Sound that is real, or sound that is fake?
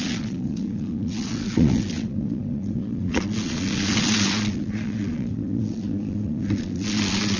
fake